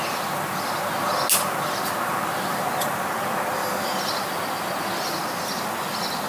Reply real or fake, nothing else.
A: real